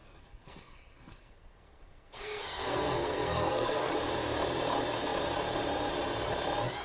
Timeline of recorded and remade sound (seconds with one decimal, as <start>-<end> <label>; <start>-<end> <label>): 0.0-3.9 remade; 3.9-6.8 recorded